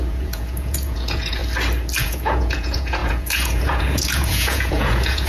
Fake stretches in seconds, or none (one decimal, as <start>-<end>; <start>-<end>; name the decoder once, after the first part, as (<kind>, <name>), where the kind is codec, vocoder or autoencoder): 0.0-1.4 (vocoder, Vocos); 2.0-5.3

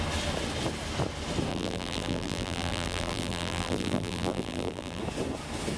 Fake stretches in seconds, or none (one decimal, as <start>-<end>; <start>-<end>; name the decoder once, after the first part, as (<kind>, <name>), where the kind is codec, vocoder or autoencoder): 1.5-5.0 (vocoder, BigVGAN v2)

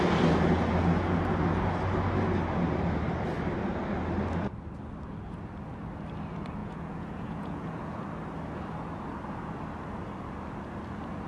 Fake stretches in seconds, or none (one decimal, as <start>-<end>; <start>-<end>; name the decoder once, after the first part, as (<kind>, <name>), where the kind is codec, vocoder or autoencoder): 6.6-8.0 (vocoder, Vocos)

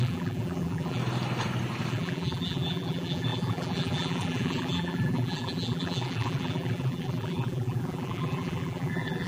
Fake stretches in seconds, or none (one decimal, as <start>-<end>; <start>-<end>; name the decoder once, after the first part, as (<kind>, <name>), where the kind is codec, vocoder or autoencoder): 0.0-1.0 (vocoder, BigVGAN v2); 1.9-9.3

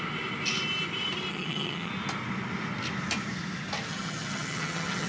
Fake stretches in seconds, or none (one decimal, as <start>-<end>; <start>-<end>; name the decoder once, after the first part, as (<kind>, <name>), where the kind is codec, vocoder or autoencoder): 1.3-1.9 (vocoder, HiFi-GAN); 3.9-5.1

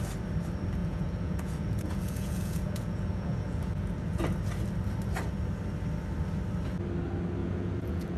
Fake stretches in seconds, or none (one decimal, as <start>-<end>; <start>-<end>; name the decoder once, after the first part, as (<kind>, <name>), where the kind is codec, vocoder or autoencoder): 0.8-4.2 (vocoder, Vocos); 7.4-8.2

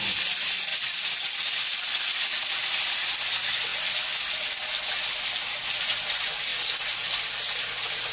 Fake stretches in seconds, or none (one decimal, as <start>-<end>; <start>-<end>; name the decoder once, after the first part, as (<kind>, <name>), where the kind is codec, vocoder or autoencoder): none